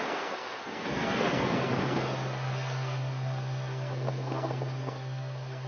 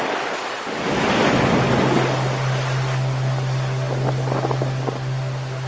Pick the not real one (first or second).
first